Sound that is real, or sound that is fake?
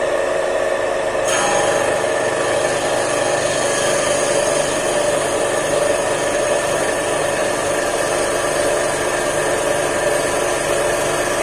real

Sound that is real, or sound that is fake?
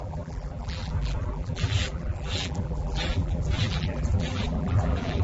fake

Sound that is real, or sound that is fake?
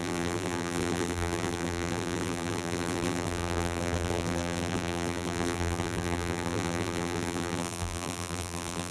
fake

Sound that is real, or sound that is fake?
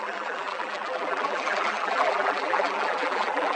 fake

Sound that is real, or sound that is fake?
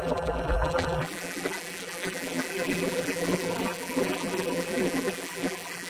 fake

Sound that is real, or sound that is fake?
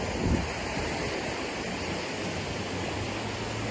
real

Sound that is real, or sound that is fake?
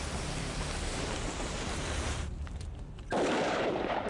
fake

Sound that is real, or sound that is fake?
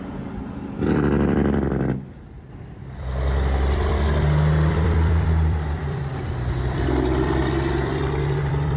fake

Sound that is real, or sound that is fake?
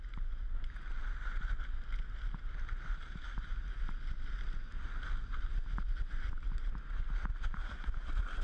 real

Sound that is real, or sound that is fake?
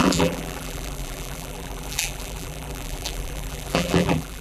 fake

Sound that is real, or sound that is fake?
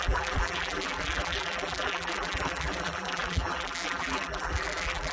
fake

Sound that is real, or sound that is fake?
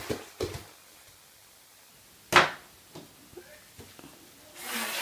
real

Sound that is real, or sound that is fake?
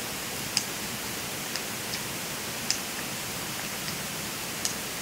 real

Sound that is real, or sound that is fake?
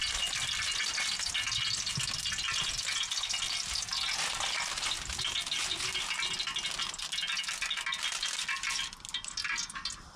real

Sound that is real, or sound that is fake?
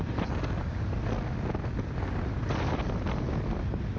real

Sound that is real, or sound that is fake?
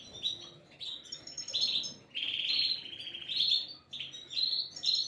fake